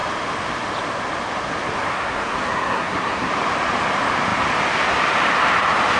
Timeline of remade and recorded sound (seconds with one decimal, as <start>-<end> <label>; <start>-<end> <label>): 0.0-1.9 recorded; 1.9-3.3 remade; 3.3-6.0 recorded

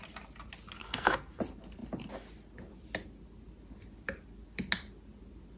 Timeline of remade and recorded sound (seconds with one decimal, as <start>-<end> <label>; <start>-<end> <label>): 0.0-0.8 recorded; 0.8-1.4 remade; 1.4-5.6 recorded

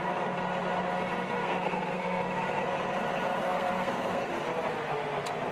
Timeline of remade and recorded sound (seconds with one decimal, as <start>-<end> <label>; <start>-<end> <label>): 0.0-1.4 recorded; 1.4-2.2 remade; 2.2-3.4 recorded; 3.4-4.3 remade; 4.3-5.5 recorded

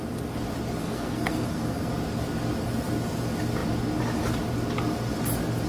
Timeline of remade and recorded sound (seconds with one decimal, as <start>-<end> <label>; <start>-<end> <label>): 0.0-0.8 recorded; 0.8-1.9 remade; 1.9-5.7 recorded